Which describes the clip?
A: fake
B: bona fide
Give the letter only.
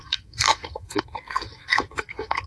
A